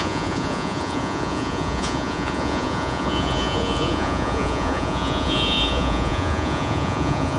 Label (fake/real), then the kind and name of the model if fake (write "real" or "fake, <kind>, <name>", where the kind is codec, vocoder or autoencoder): fake, vocoder, Vocos